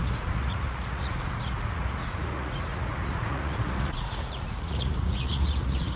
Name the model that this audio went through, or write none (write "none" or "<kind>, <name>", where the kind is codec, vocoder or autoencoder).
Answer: vocoder, Vocos